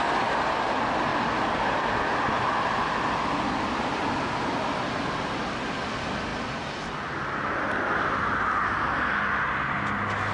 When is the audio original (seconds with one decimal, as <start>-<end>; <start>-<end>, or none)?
0.0-10.3

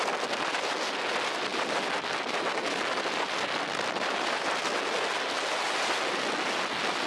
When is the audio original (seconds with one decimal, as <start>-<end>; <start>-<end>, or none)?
0.0-7.1

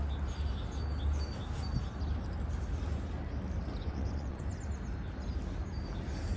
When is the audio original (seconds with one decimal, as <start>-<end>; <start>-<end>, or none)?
0.0-3.8; 4.4-6.4

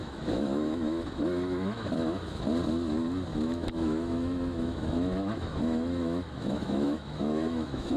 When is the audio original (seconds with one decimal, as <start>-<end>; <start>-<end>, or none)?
2.4-3.3

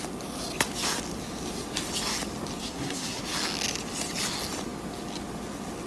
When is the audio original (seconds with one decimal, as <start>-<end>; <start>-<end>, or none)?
0.0-2.6; 3.2-5.9

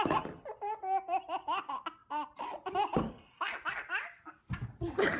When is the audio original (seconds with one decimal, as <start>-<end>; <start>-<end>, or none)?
0.0-5.2